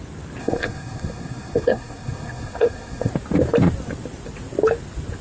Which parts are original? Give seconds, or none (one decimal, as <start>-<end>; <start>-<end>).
0.0-0.4; 3.1-5.2